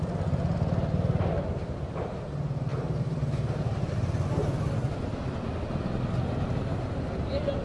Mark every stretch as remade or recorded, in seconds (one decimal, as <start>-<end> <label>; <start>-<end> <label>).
0.0-2.7 recorded; 2.7-3.9 remade; 3.9-7.6 recorded